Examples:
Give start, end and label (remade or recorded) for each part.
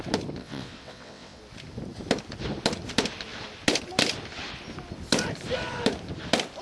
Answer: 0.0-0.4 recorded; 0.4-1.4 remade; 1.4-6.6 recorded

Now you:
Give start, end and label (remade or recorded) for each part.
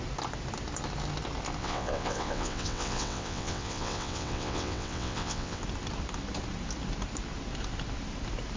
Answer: 0.0-1.6 recorded; 1.6-5.6 remade; 5.6-8.6 recorded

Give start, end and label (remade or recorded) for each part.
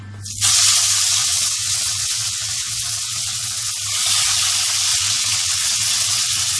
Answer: 0.0-1.2 recorded; 1.2-3.7 remade; 3.7-4.9 recorded; 4.9-6.6 remade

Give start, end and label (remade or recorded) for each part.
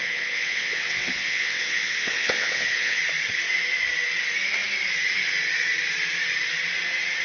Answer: 0.0-3.0 remade; 3.0-7.2 recorded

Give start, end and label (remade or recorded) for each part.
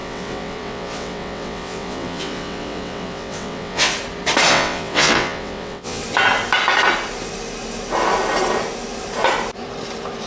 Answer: 0.0-3.9 remade; 3.9-4.5 recorded; 4.5-6.0 remade; 6.0-10.3 recorded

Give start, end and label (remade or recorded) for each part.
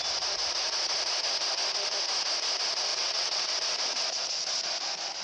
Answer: 0.0-2.9 recorded; 2.9-3.5 remade; 3.5-5.2 recorded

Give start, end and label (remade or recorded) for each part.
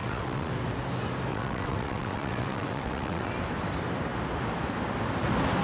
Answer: 0.0-0.5 remade; 0.5-1.3 recorded; 1.3-3.3 remade; 3.3-5.6 recorded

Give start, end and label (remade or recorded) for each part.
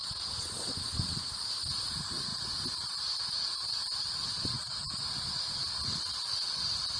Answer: 0.0-1.3 remade; 1.3-4.3 recorded; 4.3-4.8 remade; 4.8-7.0 recorded